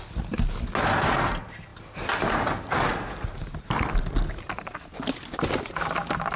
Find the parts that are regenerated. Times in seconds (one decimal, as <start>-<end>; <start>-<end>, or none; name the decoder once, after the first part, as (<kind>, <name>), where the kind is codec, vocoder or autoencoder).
2.9-3.8 (vocoder, BigVGAN v2)